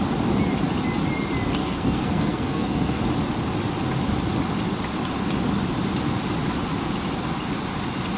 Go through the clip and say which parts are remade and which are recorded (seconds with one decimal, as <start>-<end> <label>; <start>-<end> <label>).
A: 0.0-1.6 recorded; 1.6-3.0 remade; 3.0-8.2 recorded